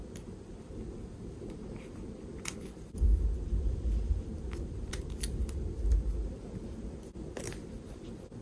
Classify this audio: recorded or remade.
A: remade